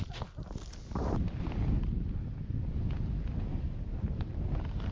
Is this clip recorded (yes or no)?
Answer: yes